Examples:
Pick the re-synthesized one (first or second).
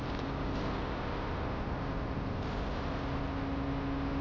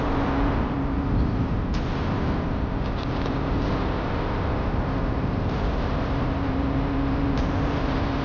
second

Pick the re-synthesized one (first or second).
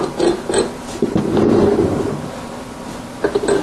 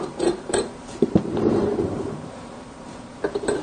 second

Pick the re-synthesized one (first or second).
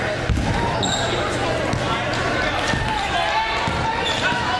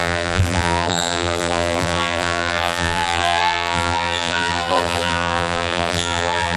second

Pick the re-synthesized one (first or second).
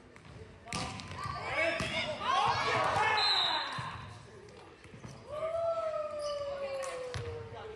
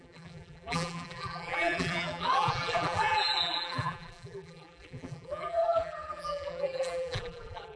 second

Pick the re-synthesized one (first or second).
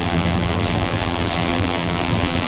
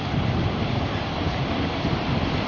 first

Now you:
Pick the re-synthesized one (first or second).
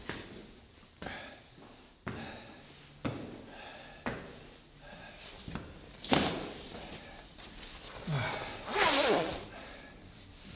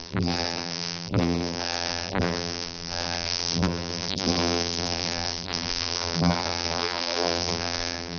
second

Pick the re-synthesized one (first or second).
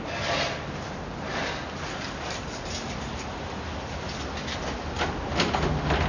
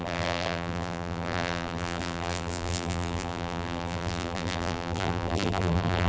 second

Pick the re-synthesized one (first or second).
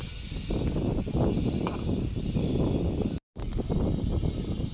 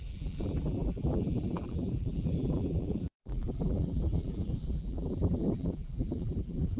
second